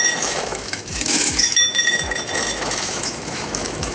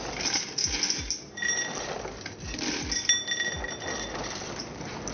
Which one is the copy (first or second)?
first